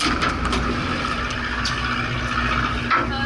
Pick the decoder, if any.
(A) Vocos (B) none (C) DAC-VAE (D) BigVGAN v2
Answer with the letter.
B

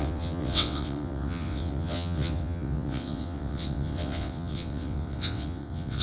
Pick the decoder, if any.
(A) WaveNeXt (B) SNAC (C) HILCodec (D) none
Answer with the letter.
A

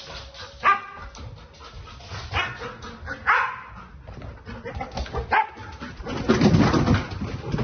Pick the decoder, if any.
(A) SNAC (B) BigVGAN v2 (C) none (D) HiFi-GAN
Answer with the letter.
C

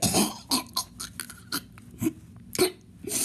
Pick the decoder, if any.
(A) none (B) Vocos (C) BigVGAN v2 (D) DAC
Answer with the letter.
A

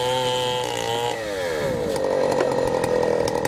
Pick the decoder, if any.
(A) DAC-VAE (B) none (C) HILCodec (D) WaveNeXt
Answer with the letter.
B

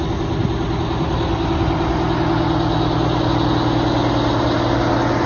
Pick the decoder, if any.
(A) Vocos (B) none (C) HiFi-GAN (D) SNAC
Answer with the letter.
B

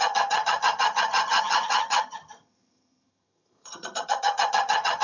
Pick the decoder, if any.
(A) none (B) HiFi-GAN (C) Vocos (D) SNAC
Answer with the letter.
B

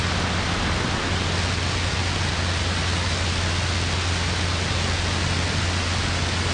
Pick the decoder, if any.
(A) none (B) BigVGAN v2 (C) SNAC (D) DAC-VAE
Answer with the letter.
A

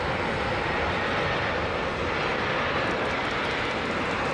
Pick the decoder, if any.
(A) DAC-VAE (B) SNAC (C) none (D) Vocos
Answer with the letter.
C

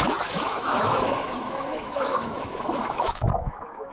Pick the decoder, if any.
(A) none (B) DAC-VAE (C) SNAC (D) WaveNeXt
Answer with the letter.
B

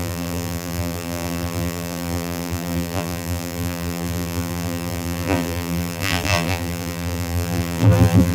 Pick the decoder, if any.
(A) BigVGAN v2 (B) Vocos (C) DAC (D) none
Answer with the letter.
A